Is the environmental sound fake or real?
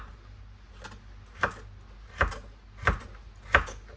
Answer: real